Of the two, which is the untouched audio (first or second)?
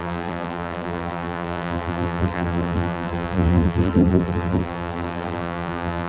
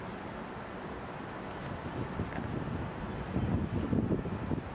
second